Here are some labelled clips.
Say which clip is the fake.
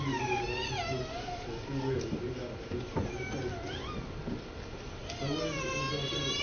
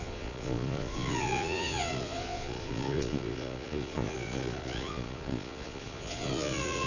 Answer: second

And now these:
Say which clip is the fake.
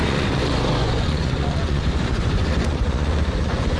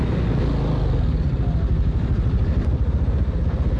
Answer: first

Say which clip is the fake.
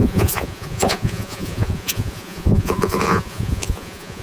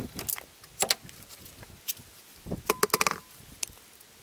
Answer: first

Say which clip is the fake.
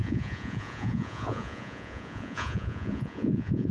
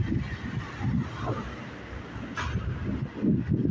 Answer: first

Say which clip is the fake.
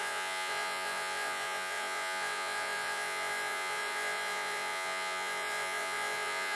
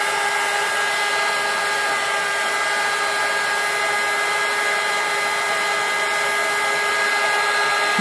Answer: first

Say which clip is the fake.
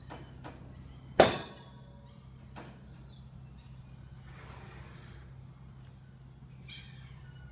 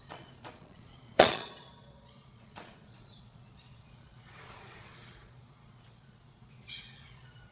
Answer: second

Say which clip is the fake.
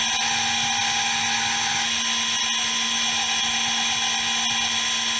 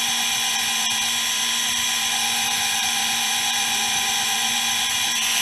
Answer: second